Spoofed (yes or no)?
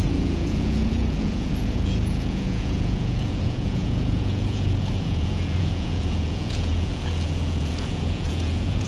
yes